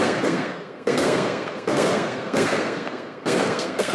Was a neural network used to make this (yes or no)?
yes